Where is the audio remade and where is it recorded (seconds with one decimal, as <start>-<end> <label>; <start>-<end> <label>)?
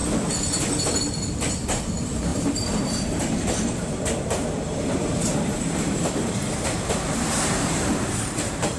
0.0-0.9 recorded; 0.9-8.8 remade